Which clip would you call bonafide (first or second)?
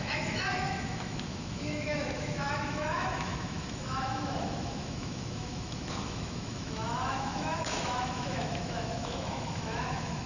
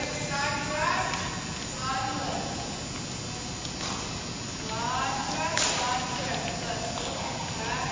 second